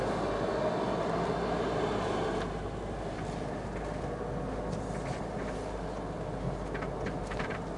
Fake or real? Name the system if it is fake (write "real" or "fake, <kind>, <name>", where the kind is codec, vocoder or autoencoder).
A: real